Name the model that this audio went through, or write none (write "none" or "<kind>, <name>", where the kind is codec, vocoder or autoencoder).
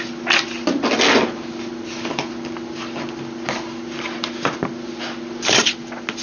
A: none